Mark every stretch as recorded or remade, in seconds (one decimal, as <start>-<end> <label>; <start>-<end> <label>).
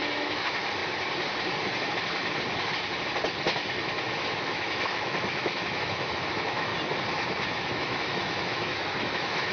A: 0.0-0.8 remade; 0.8-4.0 recorded; 4.0-6.7 remade; 6.7-7.6 recorded; 7.6-9.5 remade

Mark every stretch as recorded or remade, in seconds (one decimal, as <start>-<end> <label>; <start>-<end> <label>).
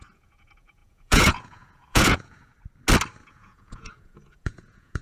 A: 0.0-2.5 remade; 2.5-3.2 recorded; 3.2-5.0 remade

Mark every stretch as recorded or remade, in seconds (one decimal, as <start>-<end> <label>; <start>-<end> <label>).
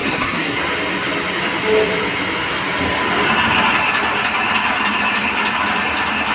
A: 0.0-0.6 remade; 0.6-6.3 recorded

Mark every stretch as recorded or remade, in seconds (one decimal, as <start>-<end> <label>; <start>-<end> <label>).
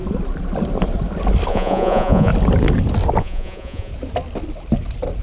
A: 0.0-1.5 recorded; 1.5-2.3 remade; 2.3-3.2 recorded; 3.2-3.9 remade; 3.9-5.2 recorded